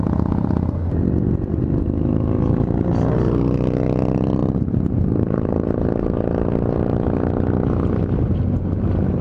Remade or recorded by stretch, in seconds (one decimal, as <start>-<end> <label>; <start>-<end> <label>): 0.0-9.2 recorded